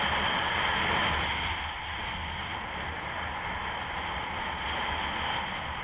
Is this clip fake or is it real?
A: real